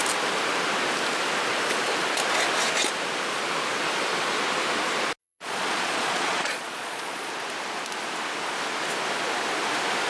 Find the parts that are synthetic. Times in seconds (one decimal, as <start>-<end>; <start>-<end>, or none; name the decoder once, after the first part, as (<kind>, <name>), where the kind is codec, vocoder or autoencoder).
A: 5.2-7.3 (vocoder, Vocos)